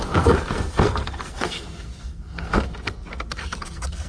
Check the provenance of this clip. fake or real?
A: fake